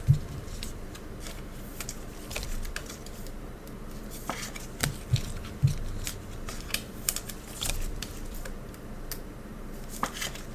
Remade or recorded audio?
remade